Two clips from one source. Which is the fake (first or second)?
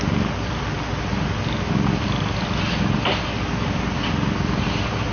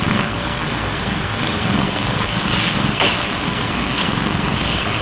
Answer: second